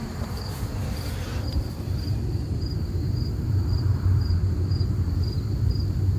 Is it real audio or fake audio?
fake